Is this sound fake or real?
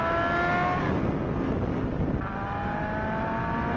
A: real